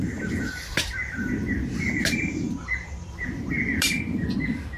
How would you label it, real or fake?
real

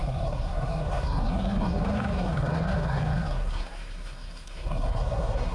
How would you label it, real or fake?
fake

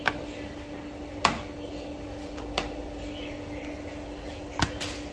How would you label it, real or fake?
real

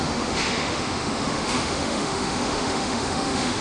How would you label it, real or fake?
fake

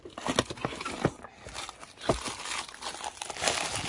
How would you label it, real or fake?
real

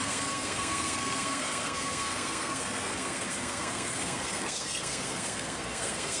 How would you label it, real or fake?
fake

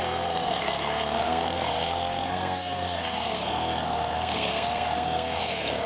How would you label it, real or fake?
fake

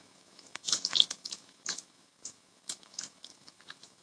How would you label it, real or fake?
fake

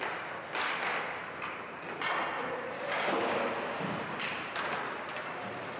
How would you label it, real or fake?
real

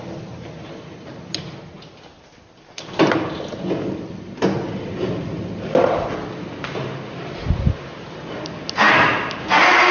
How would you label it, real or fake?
real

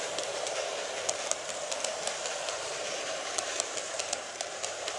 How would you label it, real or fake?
fake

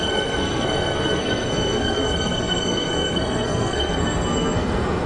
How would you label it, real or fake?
fake